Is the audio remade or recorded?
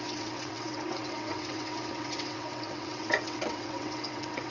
remade